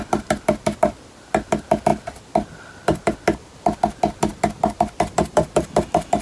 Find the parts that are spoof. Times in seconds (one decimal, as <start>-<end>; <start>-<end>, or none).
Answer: 0.0-6.2